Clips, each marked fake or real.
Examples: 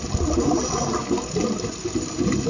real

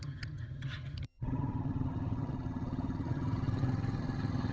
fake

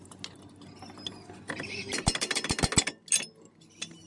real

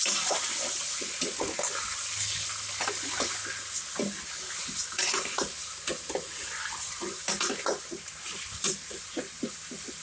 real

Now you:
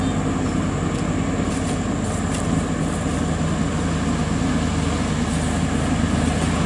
real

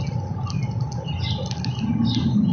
real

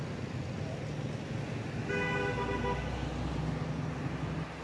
real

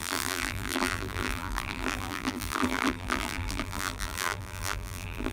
fake